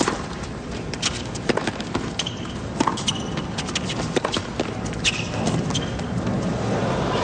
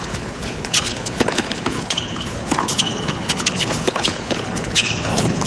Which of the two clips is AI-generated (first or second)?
second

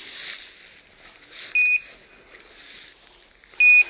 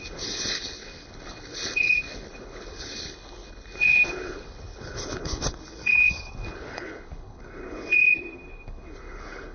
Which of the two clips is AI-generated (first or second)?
second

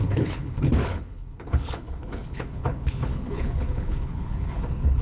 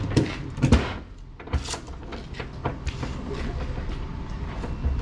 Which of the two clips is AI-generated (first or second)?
first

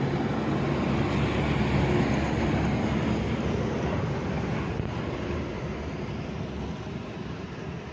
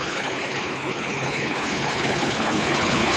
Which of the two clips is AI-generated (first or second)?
second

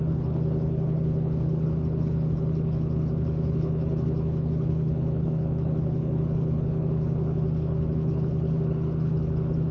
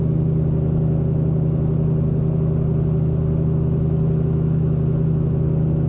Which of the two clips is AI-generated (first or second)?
first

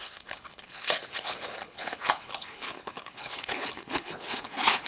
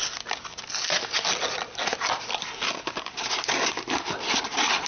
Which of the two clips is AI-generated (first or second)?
first